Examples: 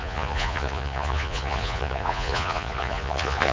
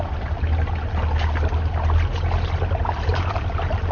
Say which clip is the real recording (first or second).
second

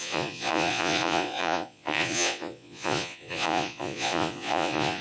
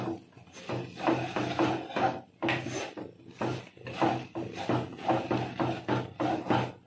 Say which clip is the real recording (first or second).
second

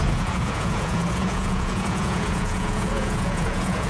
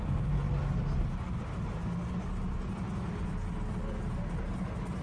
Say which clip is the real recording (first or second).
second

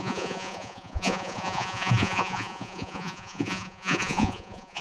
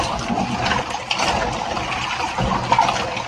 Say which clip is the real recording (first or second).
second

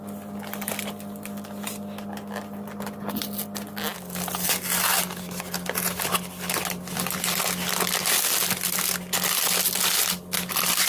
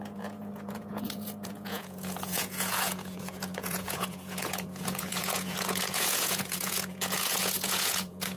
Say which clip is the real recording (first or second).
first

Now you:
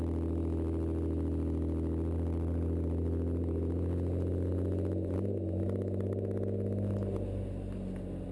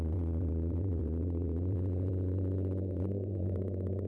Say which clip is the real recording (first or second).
first